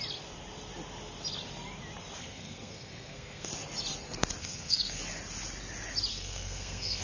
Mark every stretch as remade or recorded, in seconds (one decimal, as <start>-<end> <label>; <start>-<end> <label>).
0.0-2.2 recorded; 2.2-3.5 remade; 3.5-4.4 recorded; 4.4-5.0 remade; 5.0-6.1 recorded; 6.1-7.0 remade